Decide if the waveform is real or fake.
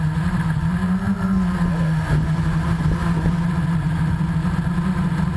real